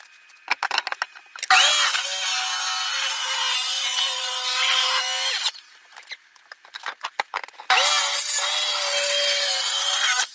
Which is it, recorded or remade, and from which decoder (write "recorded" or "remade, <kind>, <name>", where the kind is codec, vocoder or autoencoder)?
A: recorded